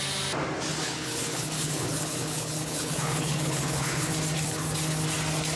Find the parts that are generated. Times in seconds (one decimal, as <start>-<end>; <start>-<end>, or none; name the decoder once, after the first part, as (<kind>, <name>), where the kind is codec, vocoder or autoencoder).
0.7-4.1 (codec, HILCodec)